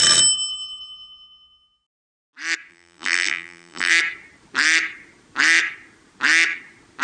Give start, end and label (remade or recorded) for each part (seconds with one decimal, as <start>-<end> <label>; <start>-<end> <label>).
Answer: 0.0-2.7 recorded; 2.7-3.9 remade; 3.9-7.0 recorded